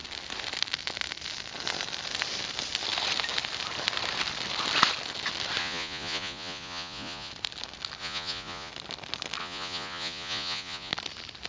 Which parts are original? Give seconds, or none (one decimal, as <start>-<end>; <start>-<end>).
0.0-5.6; 7.3-8.0; 8.7-9.4; 10.9-11.5

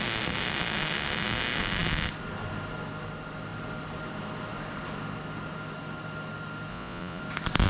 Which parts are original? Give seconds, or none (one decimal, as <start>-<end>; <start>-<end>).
0.0-6.7; 7.2-7.7

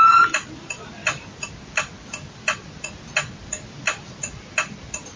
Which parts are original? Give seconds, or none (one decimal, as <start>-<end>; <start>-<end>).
0.0-5.2

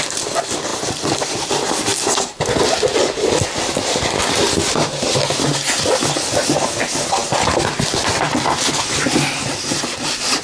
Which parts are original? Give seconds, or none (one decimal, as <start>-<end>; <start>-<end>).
0.0-10.4

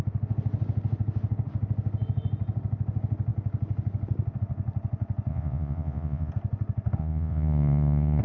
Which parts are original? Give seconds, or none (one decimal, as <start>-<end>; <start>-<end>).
0.0-5.3; 6.3-7.0